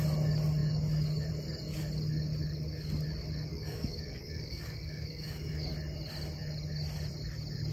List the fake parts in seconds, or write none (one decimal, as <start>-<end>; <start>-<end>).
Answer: 3.5-5.7